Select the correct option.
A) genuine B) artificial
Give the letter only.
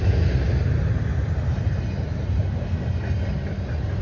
A